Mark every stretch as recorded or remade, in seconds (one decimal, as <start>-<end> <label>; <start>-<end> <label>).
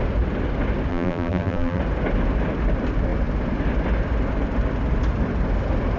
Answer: 0.0-0.9 recorded; 0.9-1.8 remade; 1.8-6.0 recorded